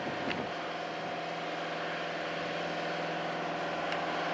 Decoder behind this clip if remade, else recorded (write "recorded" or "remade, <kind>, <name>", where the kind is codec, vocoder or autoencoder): recorded